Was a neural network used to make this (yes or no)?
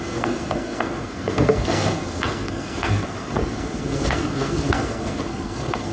yes